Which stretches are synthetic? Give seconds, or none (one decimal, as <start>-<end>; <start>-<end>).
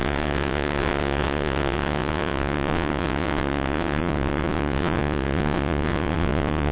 0.0-6.7